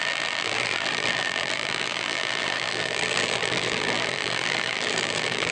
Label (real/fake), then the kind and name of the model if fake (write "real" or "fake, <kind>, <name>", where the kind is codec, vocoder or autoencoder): fake, vocoder, BigVGAN v2